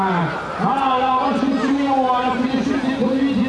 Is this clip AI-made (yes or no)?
no